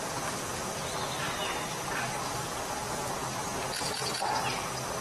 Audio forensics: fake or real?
real